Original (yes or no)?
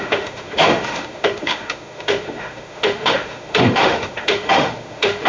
no